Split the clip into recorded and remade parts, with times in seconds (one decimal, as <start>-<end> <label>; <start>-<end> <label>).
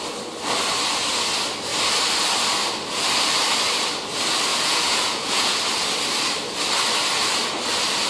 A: 0.0-4.5 recorded; 4.5-5.6 remade; 5.6-8.1 recorded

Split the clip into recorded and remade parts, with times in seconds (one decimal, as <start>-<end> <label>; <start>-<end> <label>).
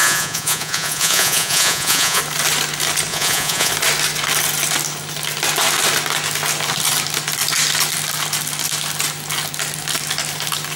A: 0.0-2.2 remade; 2.2-3.1 recorded; 3.1-3.7 remade; 3.7-10.8 recorded